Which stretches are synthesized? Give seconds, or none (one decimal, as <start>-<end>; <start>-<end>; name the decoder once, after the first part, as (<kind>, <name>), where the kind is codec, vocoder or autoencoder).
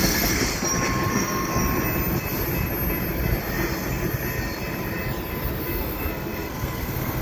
0.0-0.5 (codec, SNAC); 1.1-1.6; 5.8-7.2